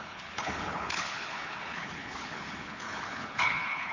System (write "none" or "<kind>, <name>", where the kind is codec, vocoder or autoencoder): codec, HILCodec